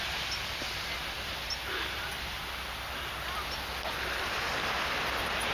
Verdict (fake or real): real